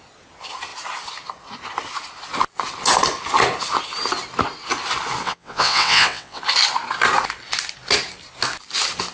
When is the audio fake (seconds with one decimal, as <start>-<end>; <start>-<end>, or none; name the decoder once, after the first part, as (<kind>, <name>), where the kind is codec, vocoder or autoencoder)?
5.2-6.4 (vocoder, WaveNeXt)